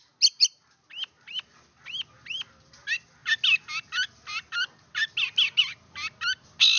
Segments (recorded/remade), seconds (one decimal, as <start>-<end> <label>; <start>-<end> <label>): 0.0-6.8 recorded